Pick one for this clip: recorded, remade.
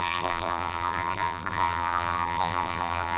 remade